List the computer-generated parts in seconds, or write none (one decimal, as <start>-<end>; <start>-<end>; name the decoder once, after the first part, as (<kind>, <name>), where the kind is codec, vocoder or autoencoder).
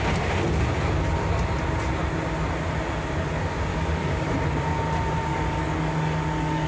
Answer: 3.7-4.3 (codec, DAC); 5.3-6.7